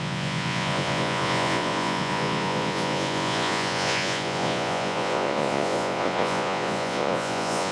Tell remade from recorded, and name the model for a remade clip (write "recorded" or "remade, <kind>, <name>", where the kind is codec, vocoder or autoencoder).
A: remade, vocoder, Vocos